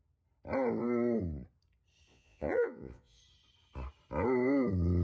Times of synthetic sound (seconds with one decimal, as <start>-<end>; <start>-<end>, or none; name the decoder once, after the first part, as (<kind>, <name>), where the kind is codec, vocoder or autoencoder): 2.1-3.2 (vocoder, Vocos)